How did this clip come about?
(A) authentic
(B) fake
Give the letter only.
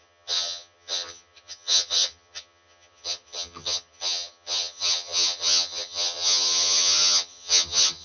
B